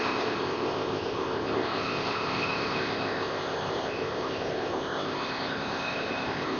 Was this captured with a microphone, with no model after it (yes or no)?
no